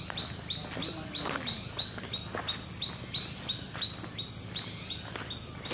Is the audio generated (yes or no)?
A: no